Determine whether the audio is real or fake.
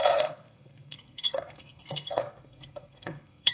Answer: fake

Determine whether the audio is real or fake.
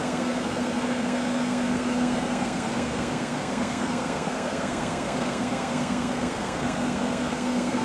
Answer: fake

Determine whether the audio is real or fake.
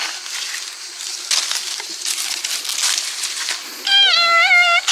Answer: real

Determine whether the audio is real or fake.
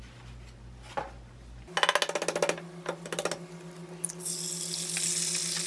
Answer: real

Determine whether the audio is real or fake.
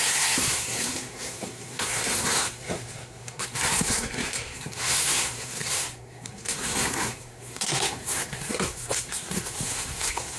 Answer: fake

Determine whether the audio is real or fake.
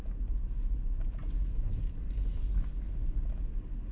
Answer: real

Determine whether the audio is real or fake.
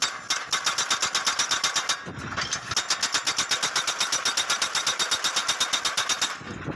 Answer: real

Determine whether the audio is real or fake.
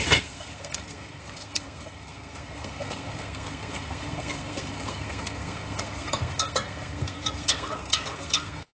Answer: fake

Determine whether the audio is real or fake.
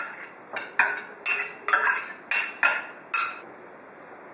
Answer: real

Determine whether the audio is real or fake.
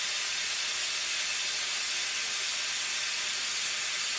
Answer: real